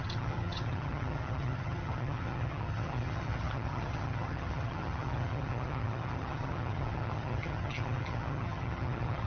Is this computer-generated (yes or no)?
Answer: yes